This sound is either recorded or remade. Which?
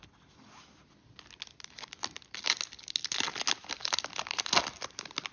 recorded